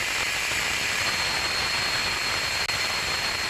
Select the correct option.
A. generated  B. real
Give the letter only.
B